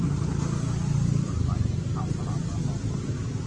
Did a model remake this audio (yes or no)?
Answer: no